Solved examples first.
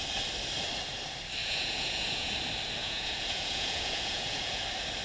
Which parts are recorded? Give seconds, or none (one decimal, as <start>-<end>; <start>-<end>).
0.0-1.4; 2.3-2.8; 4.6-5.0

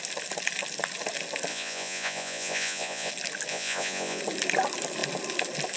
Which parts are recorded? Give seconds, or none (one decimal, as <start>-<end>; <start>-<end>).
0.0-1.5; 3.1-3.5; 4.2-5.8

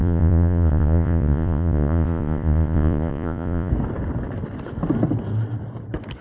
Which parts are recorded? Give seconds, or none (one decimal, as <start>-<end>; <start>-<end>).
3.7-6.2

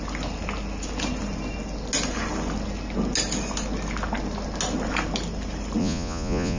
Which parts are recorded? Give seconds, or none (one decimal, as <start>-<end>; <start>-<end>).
0.0-5.8

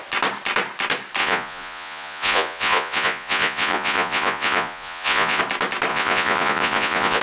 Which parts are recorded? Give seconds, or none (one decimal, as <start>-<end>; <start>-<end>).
0.0-1.2; 5.4-5.9

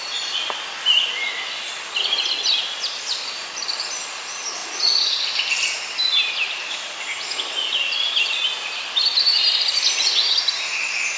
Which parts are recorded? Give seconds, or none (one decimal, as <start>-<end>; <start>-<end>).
0.0-11.2